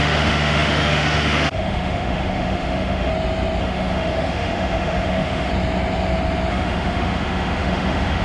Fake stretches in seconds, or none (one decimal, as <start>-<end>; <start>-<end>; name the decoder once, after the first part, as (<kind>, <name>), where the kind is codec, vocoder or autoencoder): 0.0-3.1 (autoencoder, DAC-VAE); 3.6-5.5; 6.5-8.2